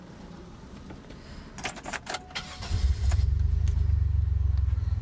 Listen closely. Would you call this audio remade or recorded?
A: recorded